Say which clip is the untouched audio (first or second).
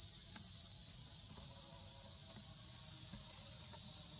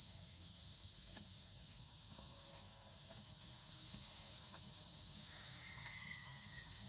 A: first